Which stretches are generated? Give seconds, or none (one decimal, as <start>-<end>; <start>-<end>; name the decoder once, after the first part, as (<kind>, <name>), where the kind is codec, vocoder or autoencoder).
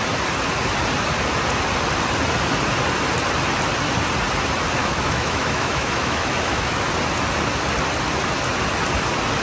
4.8-6.8 (autoencoder, DAC-VAE)